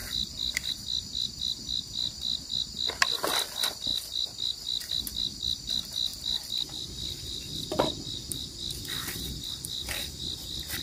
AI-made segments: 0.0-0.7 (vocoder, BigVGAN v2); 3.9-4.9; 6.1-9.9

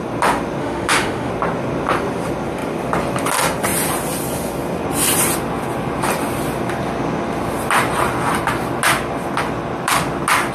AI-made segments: 0.6-1.3 (autoencoder, DAC-VAE)

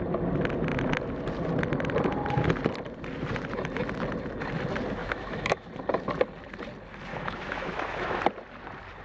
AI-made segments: 5.0-5.7 (autoencoder, DAC-VAE); 7.1-8.2

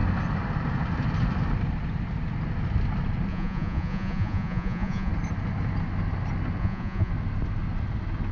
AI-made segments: 3.3-5.1 (vocoder, Vocos); 6.6-7.1

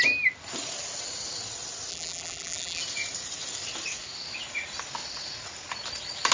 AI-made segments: 1.9-2.8 (vocoder, BigVGAN v2)

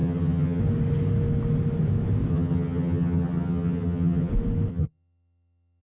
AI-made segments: 0.0-0.6 (vocoder, HiFi-GAN); 2.3-4.3; 4.7-5.8